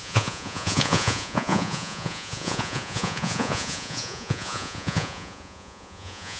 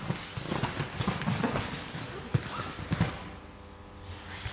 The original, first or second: second